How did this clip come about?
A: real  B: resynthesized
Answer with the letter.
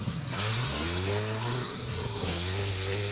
B